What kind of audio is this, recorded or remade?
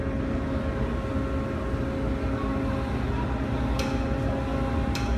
recorded